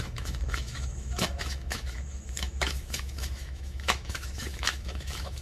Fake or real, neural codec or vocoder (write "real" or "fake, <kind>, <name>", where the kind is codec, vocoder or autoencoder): fake, autoencoder, DAC-VAE